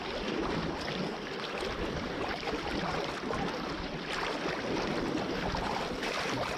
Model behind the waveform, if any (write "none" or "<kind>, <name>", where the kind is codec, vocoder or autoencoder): vocoder, BigVGAN v2